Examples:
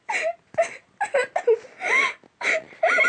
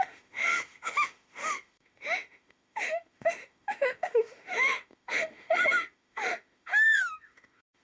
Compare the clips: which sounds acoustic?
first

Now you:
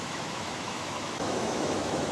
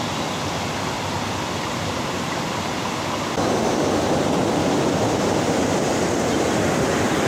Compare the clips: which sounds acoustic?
second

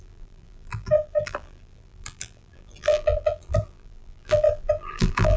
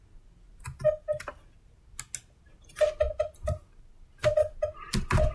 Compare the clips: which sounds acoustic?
second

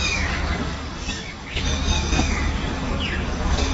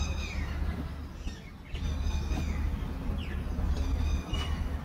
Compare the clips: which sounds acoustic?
second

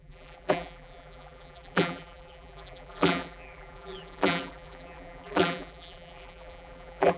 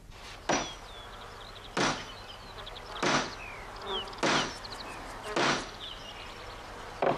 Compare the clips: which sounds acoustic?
second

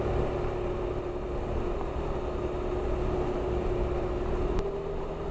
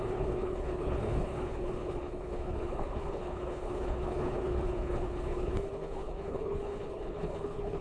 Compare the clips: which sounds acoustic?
first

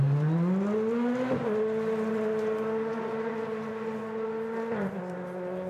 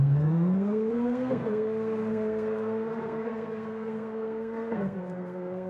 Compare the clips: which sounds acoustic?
first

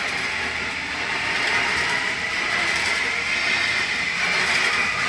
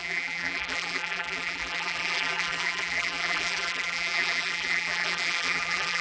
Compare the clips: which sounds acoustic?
first